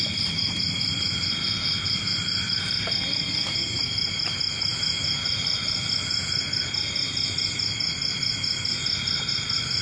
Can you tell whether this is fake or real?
real